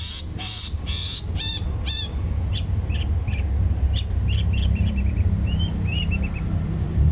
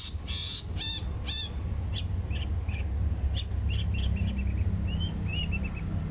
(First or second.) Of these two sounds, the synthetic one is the first